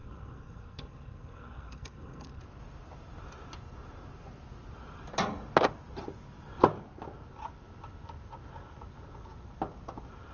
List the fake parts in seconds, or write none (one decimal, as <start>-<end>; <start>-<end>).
0.0-2.4